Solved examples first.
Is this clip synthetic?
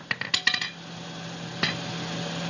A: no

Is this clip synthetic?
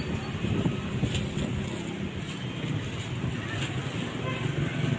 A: no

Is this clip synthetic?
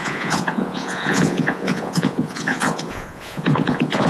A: yes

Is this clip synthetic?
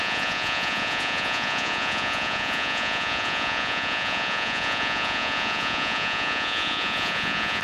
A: yes